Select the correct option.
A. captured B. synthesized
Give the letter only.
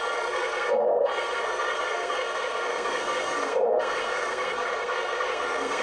B